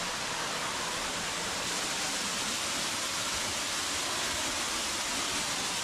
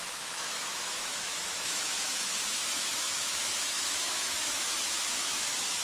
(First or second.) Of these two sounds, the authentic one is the first